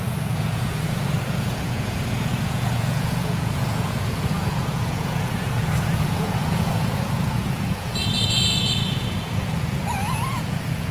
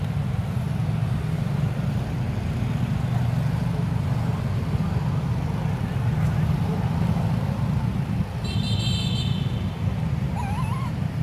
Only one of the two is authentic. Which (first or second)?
second